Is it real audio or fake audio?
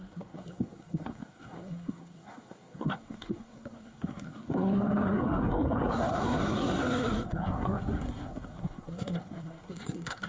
fake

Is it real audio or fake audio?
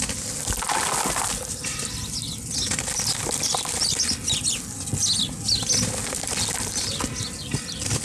real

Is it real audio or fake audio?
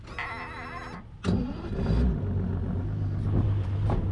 real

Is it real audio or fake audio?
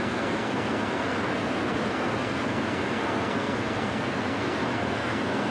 fake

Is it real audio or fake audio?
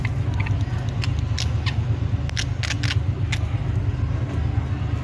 real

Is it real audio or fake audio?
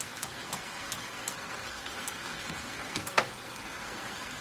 fake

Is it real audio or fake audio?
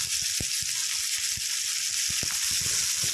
real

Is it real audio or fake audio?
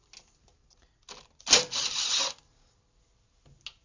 real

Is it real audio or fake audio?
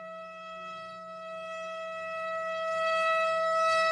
fake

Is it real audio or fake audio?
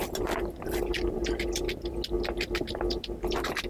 real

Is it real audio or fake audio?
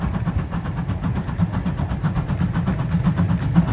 real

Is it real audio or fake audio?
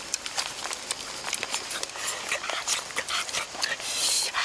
real